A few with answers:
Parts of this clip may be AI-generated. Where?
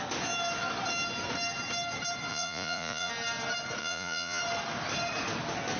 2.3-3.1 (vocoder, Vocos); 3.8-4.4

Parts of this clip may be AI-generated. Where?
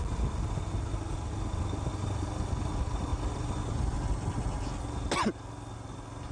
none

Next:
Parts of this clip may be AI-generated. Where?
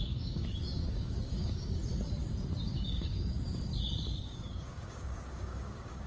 0.0-1.8 (codec, DAC); 2.7-3.7; 4.2-6.1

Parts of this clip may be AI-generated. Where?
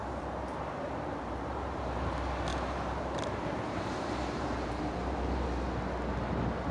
0.0-1.8 (vocoder, BigVGAN v2); 2.5-5.4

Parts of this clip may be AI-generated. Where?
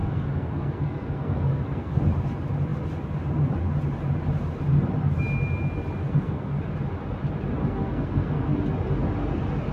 0.0-2.0 (codec, SNAC); 6.0-6.6; 7.6-8.5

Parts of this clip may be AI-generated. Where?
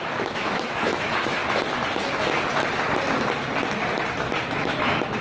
0.0-1.4 (autoencoder, DAC-VAE); 4.5-5.2